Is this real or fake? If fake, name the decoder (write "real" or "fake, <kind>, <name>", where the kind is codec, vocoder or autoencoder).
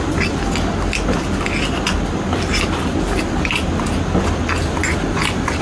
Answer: real